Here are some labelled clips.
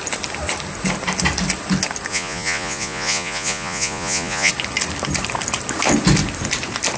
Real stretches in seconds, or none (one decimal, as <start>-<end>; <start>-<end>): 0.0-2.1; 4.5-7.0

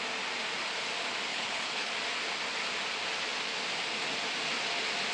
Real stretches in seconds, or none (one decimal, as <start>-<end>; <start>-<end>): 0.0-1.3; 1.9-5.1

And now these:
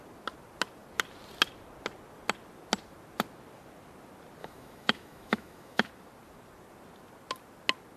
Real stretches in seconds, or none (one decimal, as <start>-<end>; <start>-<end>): 0.0-4.4; 5.9-8.0

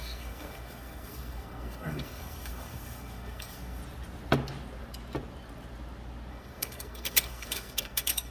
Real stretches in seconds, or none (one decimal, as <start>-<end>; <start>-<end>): 3.8-6.3